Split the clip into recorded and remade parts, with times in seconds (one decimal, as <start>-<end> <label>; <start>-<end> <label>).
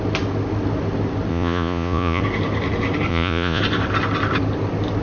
0.0-1.3 recorded; 1.3-2.2 remade; 2.2-3.1 recorded; 3.1-3.6 remade; 3.6-5.0 recorded